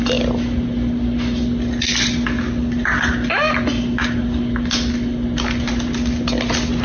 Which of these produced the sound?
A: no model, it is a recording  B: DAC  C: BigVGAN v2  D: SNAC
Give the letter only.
A